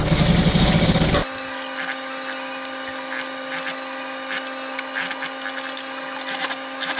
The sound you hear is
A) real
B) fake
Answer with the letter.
A